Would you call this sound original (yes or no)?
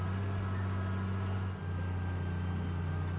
yes